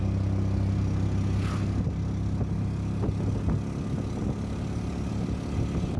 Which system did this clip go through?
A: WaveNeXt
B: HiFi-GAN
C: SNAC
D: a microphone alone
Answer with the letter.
D